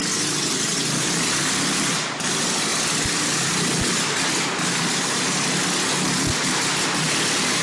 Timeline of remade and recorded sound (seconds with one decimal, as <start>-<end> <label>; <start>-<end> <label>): 0.0-7.6 recorded